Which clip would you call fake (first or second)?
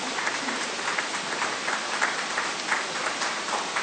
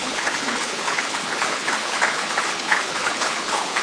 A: second